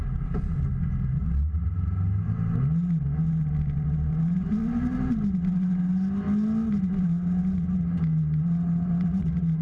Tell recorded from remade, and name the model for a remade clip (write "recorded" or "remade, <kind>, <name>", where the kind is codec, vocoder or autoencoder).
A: recorded